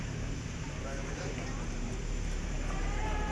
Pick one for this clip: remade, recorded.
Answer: remade